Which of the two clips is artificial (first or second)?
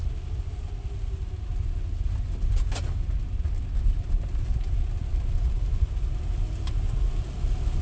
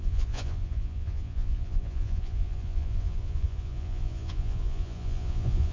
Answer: second